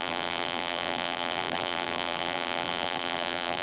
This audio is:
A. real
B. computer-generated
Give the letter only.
B